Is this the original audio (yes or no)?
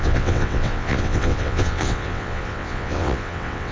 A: no